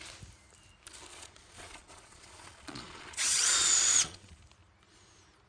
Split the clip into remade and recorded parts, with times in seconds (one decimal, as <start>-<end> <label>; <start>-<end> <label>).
0.0-1.1 recorded; 1.1-4.4 remade; 4.4-5.5 recorded